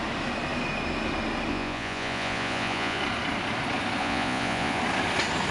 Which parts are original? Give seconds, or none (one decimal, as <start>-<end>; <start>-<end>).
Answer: 0.0-1.5; 3.0-4.0; 4.8-5.5